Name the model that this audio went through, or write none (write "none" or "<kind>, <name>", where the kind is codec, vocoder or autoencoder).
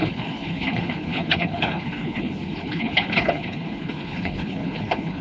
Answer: codec, HILCodec